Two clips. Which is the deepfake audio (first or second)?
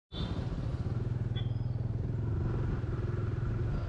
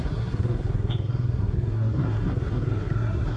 second